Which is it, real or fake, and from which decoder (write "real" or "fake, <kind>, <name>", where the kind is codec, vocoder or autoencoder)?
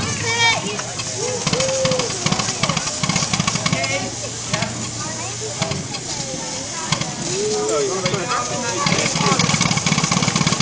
real